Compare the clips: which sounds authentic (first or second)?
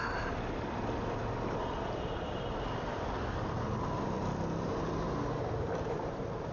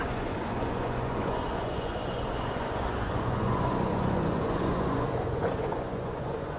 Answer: first